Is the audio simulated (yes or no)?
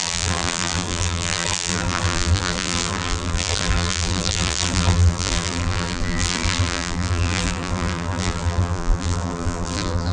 yes